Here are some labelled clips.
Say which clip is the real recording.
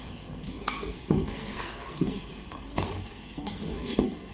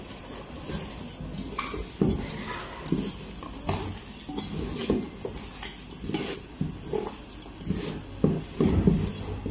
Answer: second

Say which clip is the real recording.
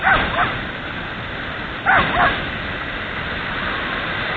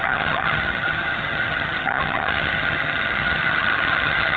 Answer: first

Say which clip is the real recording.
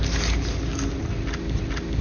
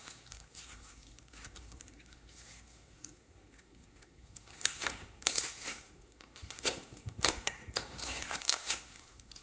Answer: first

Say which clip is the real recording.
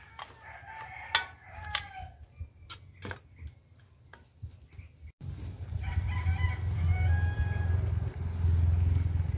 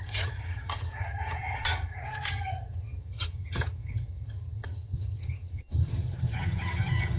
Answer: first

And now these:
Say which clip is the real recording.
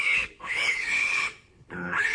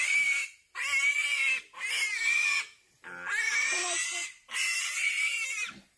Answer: second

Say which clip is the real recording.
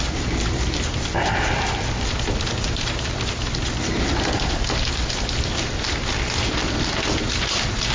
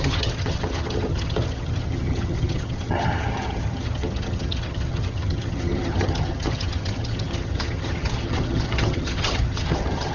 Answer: first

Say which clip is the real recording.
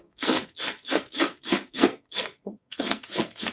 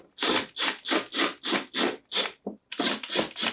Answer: second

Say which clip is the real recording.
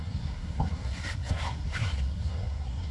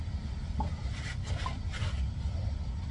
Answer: second